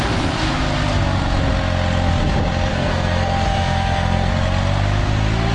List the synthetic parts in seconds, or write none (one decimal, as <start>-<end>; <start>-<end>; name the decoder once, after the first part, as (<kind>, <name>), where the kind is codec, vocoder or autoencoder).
2.7-4.3 (codec, SNAC)